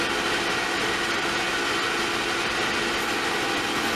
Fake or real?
real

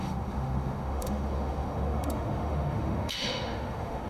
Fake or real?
fake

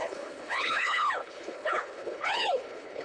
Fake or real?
fake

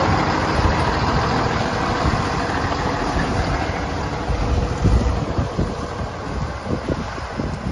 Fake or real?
real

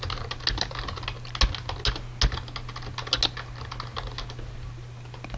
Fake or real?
real